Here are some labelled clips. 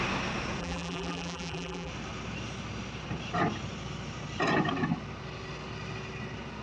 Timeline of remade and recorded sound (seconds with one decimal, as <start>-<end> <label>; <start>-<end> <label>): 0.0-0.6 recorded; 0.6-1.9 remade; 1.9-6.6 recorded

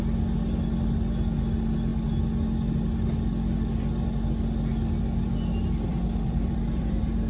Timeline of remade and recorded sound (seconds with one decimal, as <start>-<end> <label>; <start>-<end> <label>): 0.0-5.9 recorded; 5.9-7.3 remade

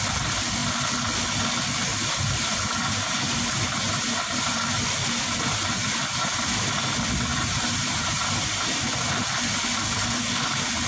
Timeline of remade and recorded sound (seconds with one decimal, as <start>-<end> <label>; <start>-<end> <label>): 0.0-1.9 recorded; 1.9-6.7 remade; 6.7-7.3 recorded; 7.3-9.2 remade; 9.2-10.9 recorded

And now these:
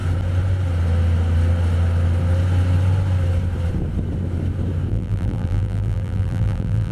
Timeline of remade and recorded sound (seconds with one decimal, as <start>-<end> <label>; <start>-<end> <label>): 0.0-4.9 recorded; 4.9-6.9 remade

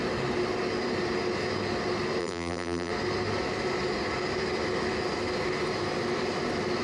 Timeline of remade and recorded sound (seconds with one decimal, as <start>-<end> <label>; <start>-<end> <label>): 0.0-2.2 recorded; 2.2-2.9 remade; 2.9-6.8 recorded